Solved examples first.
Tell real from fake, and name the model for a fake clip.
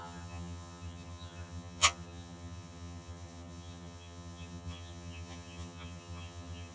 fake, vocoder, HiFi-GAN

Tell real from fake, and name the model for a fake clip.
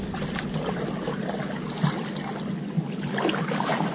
real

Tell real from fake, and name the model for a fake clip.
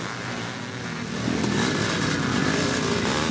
real